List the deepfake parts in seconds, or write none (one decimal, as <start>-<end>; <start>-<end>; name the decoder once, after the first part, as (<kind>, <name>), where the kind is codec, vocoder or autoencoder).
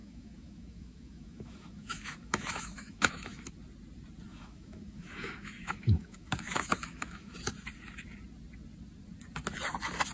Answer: 0.0-3.5 (autoencoder, DAC-VAE); 4.3-7.3